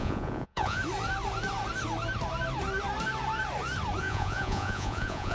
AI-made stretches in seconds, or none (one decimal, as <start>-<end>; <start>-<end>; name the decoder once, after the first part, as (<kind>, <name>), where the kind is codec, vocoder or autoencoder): 0.0-0.8 (vocoder, Vocos); 4.0-5.3